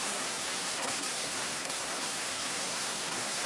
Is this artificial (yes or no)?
yes